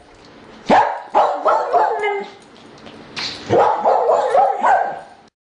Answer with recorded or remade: recorded